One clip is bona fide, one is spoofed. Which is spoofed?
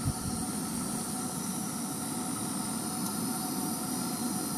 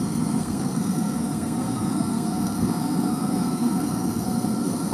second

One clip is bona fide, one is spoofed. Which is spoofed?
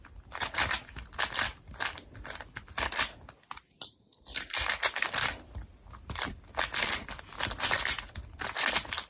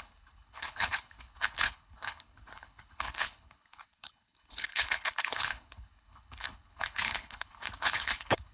second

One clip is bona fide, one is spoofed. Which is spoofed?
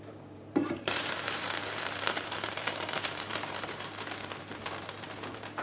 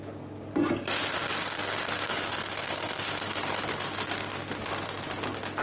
first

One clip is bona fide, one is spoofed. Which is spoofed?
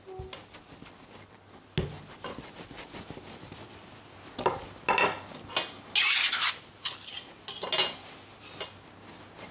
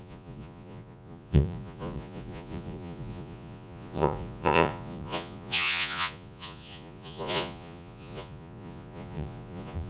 second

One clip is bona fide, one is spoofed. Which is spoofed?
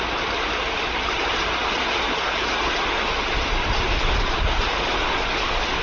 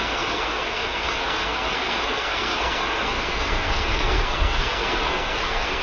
second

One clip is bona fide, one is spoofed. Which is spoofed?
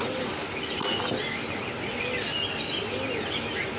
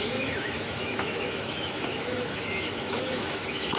second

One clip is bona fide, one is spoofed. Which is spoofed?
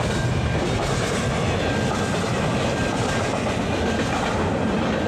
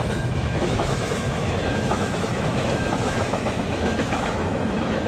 second